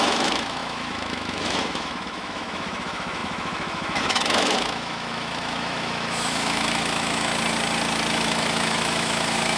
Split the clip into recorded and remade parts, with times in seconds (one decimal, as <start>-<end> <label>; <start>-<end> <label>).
0.0-7.3 remade; 7.3-8.1 recorded; 8.1-9.6 remade